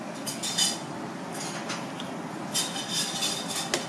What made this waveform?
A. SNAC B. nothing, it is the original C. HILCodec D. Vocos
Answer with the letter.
B